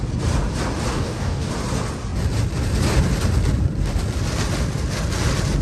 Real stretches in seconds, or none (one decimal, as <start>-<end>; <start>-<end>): 0.0-0.9; 1.5-5.6